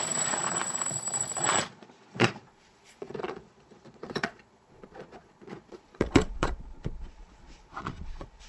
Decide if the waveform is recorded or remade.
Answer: remade